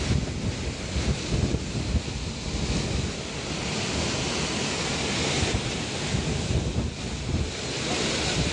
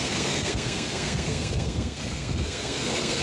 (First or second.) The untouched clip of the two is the first